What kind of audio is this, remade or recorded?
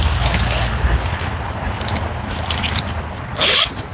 recorded